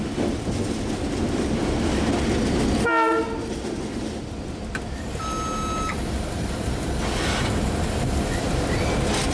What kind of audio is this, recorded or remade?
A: recorded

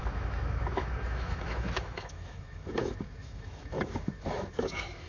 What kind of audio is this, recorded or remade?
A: remade